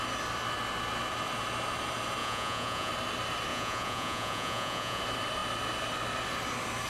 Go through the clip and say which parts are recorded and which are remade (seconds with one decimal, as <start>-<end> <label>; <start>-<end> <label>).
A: 0.0-2.2 recorded; 2.2-2.9 remade; 2.9-3.5 recorded; 3.5-5.0 remade; 5.0-6.9 recorded